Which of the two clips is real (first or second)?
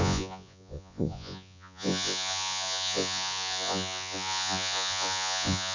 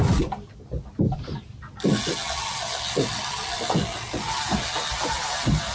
second